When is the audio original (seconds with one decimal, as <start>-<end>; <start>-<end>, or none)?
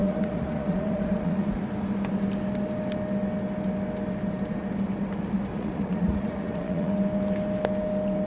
1.5-5.5; 6.9-8.3